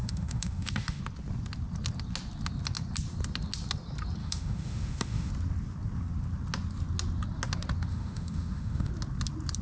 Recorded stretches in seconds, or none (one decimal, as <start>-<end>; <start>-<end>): 1.0-4.2; 5.3-7.9; 8.9-9.6